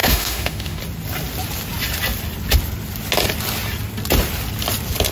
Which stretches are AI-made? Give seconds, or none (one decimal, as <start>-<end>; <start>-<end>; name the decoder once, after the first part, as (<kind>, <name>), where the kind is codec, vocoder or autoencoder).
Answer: 0.0-0.8 (autoencoder, DAC-VAE)